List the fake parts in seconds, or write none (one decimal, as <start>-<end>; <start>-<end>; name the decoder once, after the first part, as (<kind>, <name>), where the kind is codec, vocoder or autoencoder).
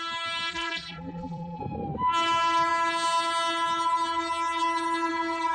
0.5-1.6 (vocoder, BigVGAN v2)